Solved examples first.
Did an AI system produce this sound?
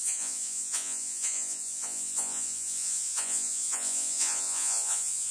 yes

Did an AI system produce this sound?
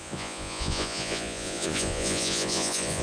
yes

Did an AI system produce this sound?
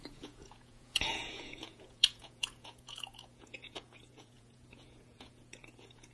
yes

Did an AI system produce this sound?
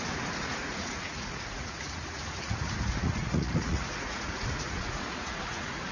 yes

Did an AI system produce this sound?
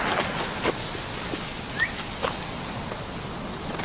no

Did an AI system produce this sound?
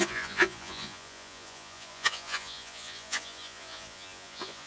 yes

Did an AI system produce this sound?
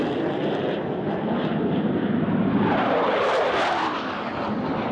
no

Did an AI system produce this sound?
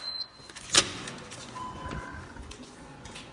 yes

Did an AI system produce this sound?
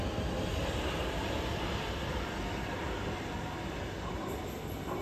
no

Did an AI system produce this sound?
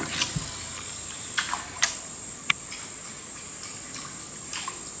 no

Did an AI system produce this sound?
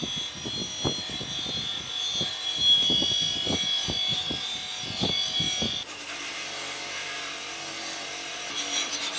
no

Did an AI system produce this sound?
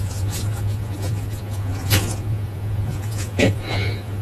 yes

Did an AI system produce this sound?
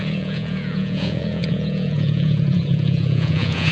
yes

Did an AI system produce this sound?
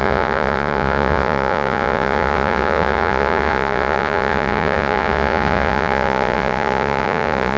yes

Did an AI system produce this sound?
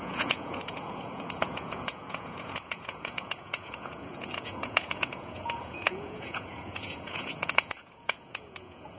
yes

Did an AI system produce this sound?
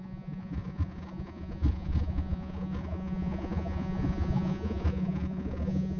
yes